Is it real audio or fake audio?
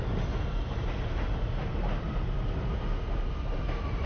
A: real